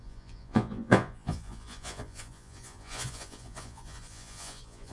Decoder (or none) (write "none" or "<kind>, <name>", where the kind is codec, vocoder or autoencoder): vocoder, Vocos